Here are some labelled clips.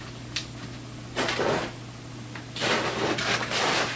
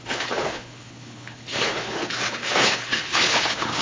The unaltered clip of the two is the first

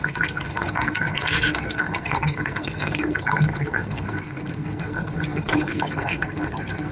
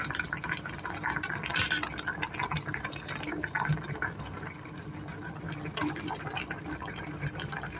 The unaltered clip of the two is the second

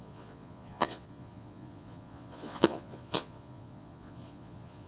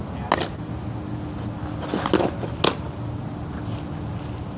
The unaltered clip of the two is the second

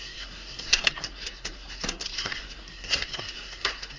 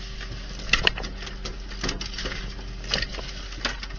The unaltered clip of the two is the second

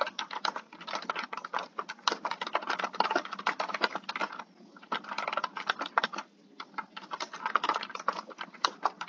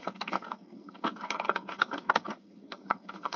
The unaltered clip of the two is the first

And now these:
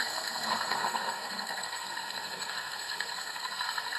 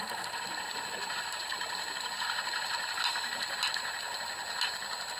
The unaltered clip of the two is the second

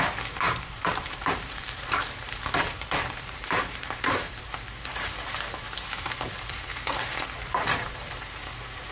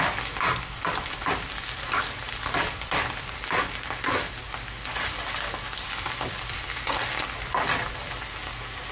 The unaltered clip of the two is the second